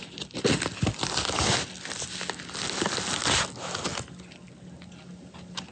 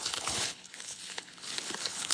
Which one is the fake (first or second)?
second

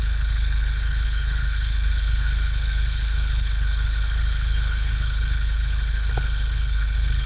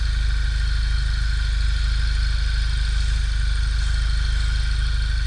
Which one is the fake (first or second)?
first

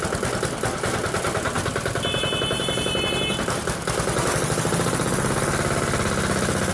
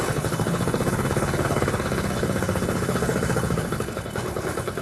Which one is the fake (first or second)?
second